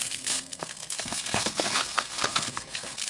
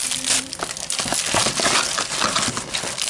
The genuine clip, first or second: second